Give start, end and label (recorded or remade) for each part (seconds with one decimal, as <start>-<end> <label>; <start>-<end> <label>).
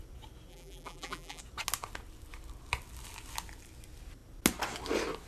0.0-0.5 recorded; 0.5-1.4 remade; 1.4-5.3 recorded